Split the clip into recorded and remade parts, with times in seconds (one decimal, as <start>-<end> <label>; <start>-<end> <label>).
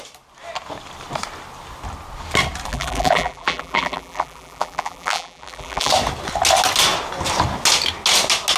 0.0-2.7 recorded; 2.7-5.9 remade; 5.9-8.6 recorded